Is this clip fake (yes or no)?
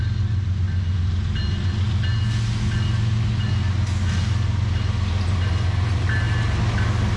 no